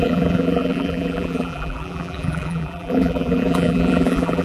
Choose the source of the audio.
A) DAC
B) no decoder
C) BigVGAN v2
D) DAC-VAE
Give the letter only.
C